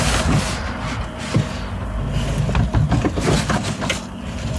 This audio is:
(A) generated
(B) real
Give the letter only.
B